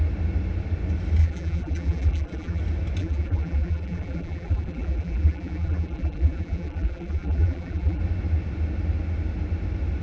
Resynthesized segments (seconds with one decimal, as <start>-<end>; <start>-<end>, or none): 1.2-2.6; 3.0-8.0